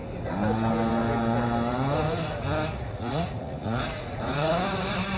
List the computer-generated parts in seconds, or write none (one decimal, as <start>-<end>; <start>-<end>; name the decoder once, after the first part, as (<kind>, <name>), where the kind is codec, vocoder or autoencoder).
2.7-4.5 (vocoder, Vocos)